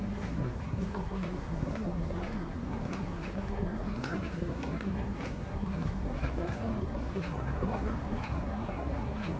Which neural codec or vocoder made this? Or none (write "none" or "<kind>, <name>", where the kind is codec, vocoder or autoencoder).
codec, SNAC